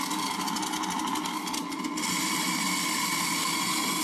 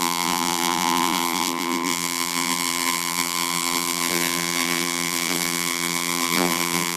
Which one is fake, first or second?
second